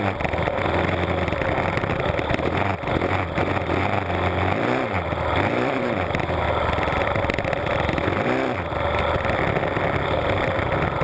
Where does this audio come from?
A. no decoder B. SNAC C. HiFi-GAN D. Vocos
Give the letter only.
A